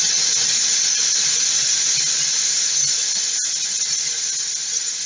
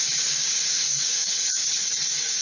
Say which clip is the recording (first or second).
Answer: first